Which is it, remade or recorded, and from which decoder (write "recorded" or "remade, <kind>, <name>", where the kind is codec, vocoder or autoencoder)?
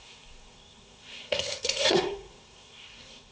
remade, codec, SNAC